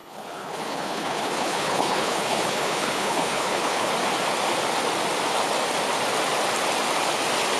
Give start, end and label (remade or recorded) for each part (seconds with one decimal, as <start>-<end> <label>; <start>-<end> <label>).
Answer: 0.0-3.9 remade; 3.9-7.6 recorded